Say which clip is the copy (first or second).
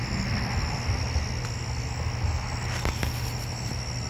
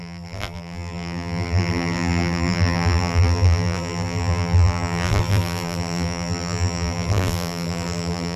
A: second